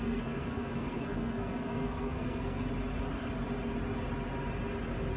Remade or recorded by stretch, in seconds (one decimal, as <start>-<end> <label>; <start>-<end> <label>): 0.0-2.6 remade; 2.6-5.2 recorded